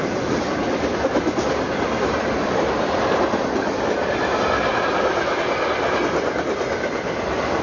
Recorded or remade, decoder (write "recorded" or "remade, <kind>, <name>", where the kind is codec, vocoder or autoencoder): remade, vocoder, BigVGAN v2